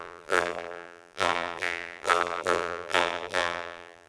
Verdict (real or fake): fake